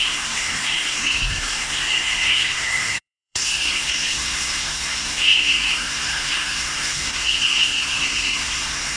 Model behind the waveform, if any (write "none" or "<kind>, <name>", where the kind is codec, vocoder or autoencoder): codec, SNAC